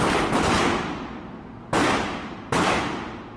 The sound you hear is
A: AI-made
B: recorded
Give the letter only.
B